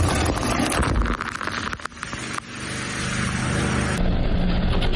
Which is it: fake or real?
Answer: real